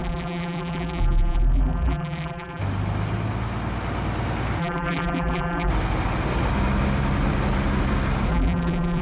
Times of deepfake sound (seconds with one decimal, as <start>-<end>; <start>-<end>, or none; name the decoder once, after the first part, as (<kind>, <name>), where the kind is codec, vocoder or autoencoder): 0.0-2.6 (vocoder, BigVGAN v2); 4.6-5.7; 8.3-9.0